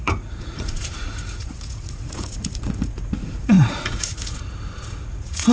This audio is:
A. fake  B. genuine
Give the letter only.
A